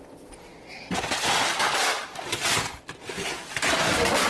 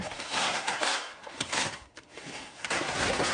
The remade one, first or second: second